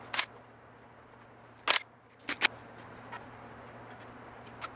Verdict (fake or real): real